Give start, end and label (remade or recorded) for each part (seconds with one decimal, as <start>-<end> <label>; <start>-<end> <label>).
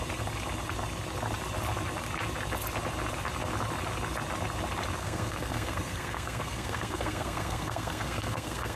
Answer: 0.0-5.0 recorded; 5.0-8.8 remade